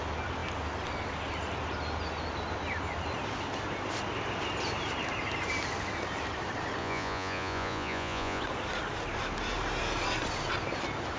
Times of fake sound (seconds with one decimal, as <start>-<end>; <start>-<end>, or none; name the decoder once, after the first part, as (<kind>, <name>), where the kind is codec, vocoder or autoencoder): 6.8-8.4 (vocoder, Vocos)